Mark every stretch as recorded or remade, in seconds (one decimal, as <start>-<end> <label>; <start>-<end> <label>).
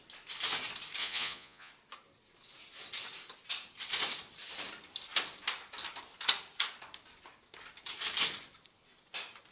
0.0-1.0 recorded; 1.0-1.7 remade; 1.7-9.5 recorded